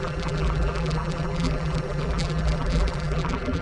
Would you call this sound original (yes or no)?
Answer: no